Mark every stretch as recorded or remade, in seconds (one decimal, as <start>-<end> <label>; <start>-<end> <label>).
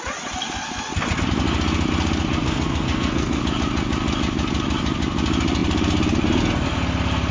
0.0-2.4 recorded; 2.4-3.4 remade; 3.4-7.3 recorded